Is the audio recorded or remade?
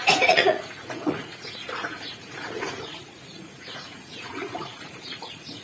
remade